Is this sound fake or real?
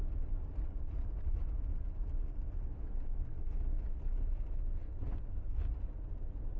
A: real